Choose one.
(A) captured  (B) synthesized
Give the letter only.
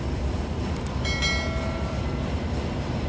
A